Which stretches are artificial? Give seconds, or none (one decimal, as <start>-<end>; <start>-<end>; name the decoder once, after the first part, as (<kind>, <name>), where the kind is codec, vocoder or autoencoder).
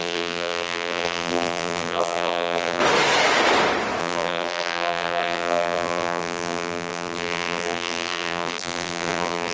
0.0-2.8 (vocoder, BigVGAN v2); 4.0-9.5